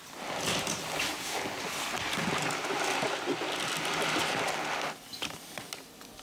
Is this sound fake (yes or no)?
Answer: no